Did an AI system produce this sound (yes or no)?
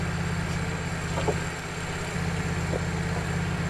no